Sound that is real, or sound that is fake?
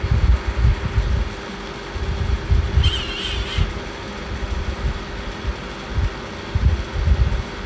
real